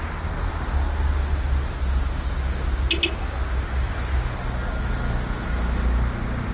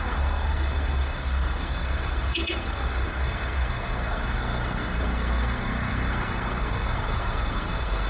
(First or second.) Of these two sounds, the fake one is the second